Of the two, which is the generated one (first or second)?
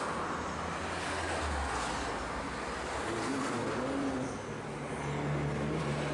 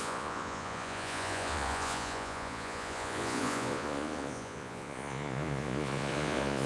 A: second